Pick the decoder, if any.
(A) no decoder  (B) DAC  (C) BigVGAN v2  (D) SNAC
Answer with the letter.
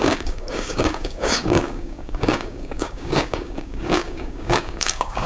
B